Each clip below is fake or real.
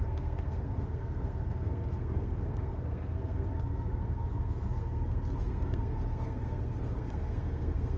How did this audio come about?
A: fake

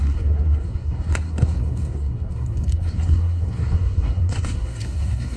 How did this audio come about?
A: fake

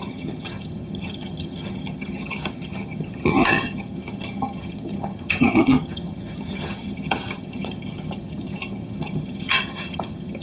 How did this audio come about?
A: fake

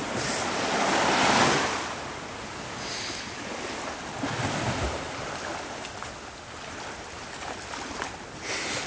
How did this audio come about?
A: real